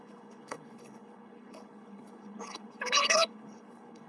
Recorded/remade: remade